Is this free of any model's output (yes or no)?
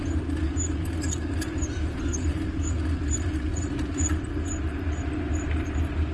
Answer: yes